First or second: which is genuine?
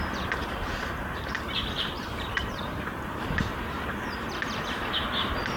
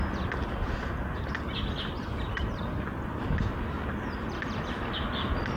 second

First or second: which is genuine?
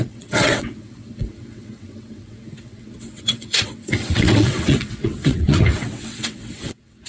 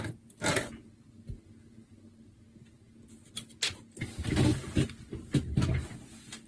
second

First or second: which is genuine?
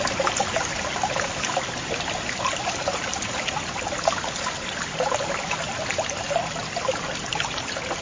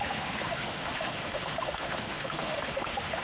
first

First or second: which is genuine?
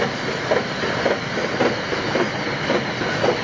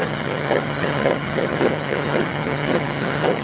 first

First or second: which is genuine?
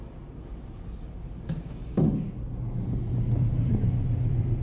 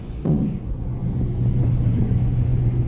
first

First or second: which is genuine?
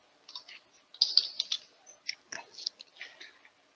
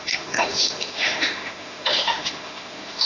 first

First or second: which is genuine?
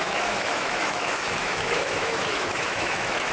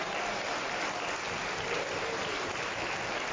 second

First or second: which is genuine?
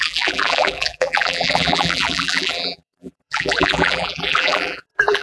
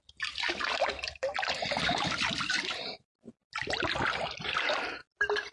second